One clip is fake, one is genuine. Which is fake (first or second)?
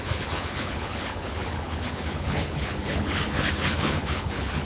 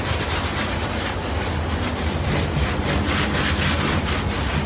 first